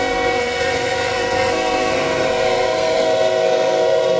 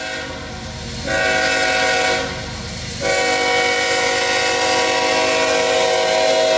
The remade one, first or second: first